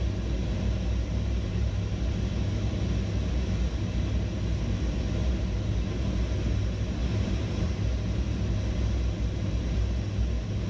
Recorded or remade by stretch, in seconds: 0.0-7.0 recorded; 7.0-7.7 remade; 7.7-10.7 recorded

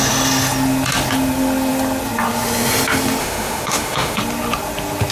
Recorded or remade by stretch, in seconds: 0.0-3.2 recorded; 3.2-4.2 remade; 4.2-5.1 recorded

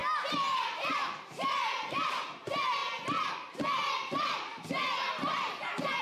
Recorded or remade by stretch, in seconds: 0.0-6.0 recorded

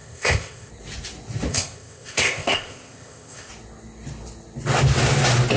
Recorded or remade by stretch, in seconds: 0.0-0.7 remade; 0.7-1.5 recorded; 1.5-3.5 remade; 3.5-5.6 recorded

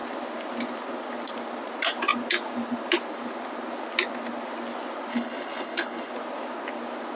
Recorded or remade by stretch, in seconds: 0.0-5.1 recorded; 5.1-6.1 remade; 6.1-7.2 recorded